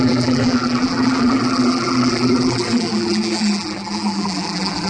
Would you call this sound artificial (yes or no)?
yes